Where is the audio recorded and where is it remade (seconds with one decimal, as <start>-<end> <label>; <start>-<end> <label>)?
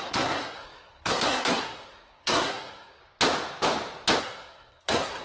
0.0-3.0 remade; 3.0-4.2 recorded; 4.2-5.2 remade